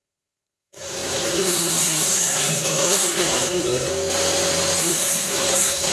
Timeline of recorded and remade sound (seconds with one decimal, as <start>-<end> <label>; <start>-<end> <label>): 0.0-3.9 remade; 3.9-4.8 recorded; 4.8-5.9 remade